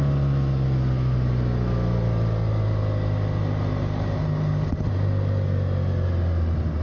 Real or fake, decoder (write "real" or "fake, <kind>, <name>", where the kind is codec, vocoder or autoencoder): real